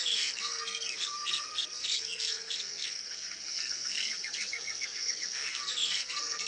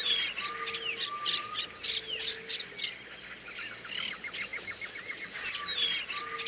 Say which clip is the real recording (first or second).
second